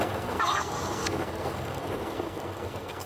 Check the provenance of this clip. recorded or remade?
remade